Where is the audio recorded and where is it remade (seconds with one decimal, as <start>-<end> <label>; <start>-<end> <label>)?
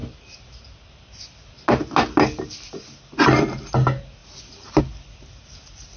0.0-6.0 recorded